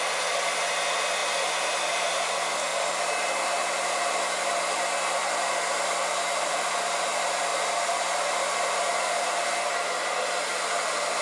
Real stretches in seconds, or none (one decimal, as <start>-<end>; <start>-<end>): 0.0-11.2